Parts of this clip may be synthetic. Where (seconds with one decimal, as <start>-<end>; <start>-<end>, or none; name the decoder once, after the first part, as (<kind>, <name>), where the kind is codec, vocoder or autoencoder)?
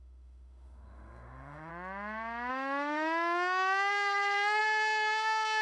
0.0-1.7 (autoencoder, DAC-VAE); 2.5-5.6